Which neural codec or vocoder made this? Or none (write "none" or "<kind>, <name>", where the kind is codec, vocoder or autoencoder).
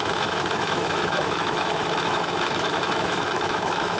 autoencoder, DAC-VAE